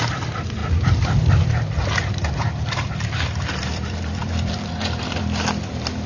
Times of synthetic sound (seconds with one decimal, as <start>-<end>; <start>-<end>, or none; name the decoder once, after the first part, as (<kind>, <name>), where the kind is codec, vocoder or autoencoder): 0.0-0.6 (vocoder, BigVGAN v2); 2.3-6.1